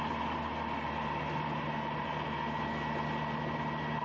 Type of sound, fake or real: real